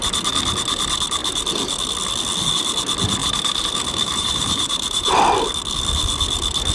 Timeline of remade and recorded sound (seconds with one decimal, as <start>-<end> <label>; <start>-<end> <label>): 0.0-3.2 recorded; 3.2-5.2 remade; 5.2-6.7 recorded